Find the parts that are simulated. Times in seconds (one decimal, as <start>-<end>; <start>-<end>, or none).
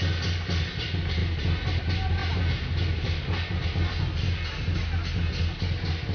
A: none